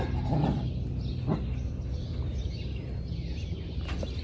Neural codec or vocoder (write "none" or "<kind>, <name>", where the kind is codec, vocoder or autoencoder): none